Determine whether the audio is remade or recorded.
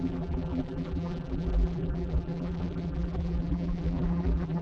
remade